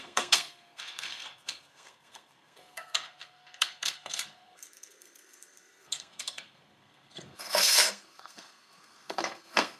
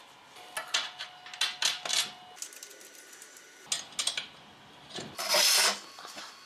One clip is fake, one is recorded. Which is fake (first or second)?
first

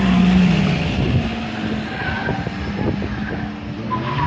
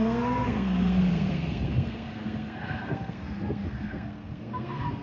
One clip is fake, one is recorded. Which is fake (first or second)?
second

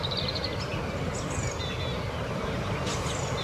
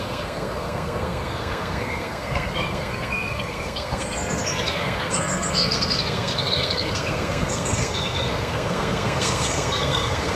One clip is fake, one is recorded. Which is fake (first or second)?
second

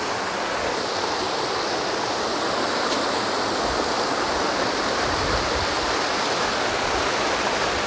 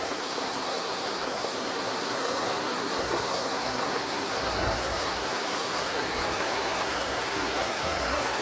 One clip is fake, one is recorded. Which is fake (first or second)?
second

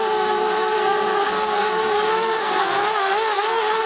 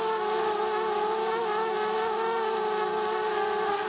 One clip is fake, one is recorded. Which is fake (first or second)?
first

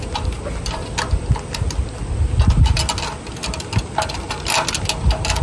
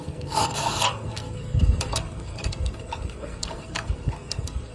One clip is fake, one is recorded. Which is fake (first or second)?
second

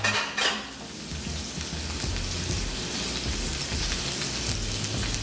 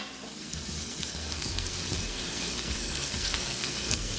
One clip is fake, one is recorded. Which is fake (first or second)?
second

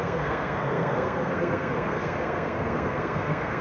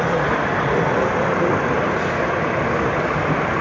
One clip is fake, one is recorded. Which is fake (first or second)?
first